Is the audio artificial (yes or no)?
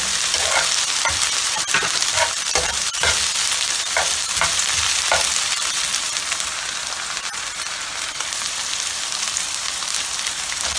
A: yes